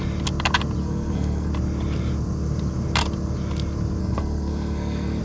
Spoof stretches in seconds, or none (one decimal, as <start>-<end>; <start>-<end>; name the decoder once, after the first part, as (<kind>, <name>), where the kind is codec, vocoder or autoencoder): 0.8-1.5 (codec, SNAC); 4.0-5.2